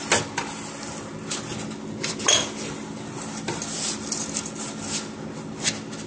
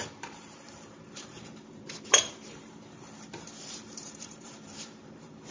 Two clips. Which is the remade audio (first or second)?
second